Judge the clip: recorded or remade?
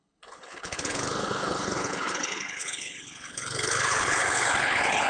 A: remade